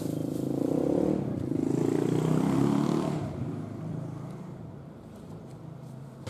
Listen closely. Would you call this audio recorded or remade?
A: remade